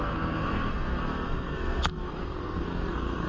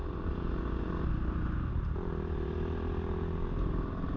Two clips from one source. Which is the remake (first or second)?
first